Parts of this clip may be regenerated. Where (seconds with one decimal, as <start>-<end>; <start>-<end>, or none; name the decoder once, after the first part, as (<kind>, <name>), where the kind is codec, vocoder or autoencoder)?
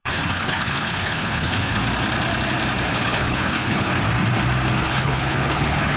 0.0-1.8 (codec, HILCodec); 2.9-3.9; 4.8-6.0